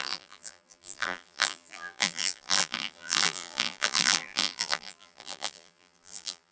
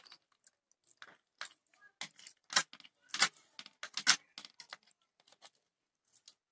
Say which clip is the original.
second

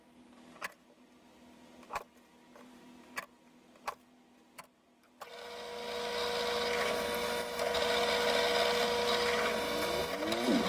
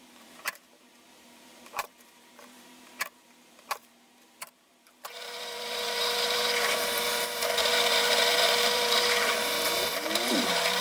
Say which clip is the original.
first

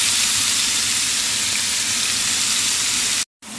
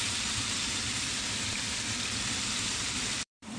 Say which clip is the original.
first